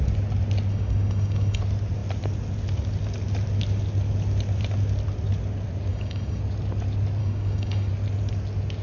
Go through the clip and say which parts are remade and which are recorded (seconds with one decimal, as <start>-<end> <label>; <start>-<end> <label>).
0.0-0.7 recorded; 0.7-1.6 remade; 1.6-5.9 recorded; 5.9-6.4 remade; 6.4-7.2 recorded; 7.2-7.9 remade; 7.9-8.8 recorded

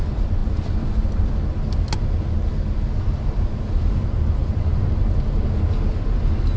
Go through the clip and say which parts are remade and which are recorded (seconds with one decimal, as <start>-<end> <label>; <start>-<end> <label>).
0.0-6.6 recorded

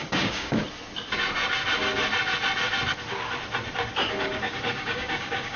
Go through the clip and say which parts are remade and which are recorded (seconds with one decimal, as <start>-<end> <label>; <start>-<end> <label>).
0.0-0.6 remade; 0.6-4.0 recorded; 4.0-5.6 remade

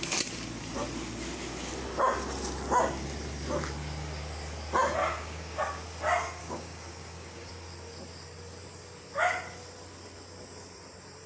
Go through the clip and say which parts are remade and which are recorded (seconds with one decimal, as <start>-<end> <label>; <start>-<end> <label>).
0.0-5.0 recorded; 5.0-5.6 remade; 5.6-6.4 recorded; 6.4-7.5 remade; 7.5-11.3 recorded

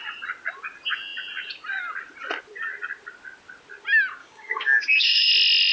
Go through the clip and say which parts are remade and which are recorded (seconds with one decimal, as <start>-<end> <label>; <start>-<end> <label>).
0.0-4.2 recorded; 4.2-5.3 remade; 5.3-5.7 recorded